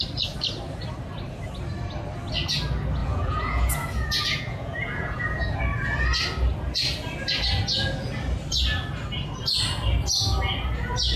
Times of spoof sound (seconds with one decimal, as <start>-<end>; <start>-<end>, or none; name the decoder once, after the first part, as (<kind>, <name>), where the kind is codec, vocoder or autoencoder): 3.0-5.6 (vocoder, Vocos)